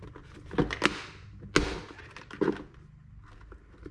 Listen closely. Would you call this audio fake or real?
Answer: real